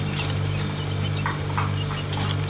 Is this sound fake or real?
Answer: real